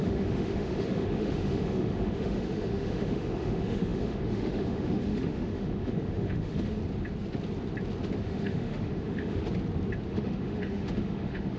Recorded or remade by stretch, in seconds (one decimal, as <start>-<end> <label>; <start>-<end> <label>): 0.0-6.8 remade; 6.8-8.2 recorded; 8.2-9.4 remade; 9.4-10.1 recorded; 10.1-11.6 remade